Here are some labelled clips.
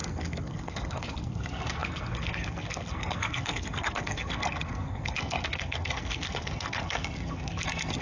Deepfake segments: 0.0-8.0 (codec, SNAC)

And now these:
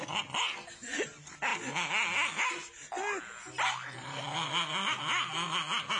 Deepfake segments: none

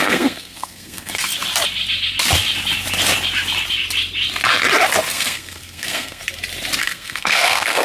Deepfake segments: 0.0-1.3 (codec, SNAC); 5.1-6.2; 6.8-7.8

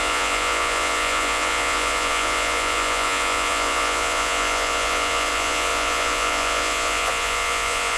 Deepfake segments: 0.0-8.0 (vocoder, Vocos)

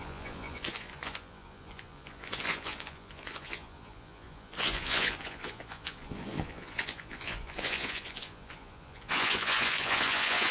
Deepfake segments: 0.0-10.5 (vocoder, Vocos)

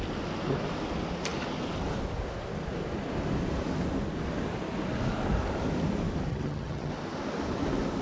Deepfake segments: 6.3-6.9 (vocoder, HiFi-GAN)